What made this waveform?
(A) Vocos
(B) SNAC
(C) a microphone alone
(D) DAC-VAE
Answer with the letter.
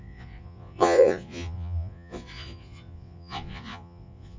A